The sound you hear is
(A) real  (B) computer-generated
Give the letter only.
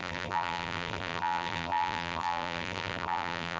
B